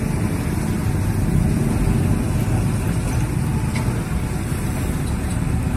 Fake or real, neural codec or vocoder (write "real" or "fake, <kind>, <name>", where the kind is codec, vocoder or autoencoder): real